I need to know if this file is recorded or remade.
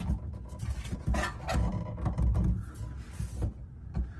recorded